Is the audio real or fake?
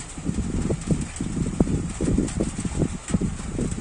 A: real